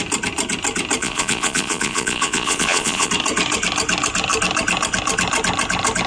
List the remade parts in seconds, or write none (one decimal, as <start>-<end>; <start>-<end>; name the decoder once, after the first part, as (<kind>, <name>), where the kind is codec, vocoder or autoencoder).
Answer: 1.0-3.1 (vocoder, Vocos)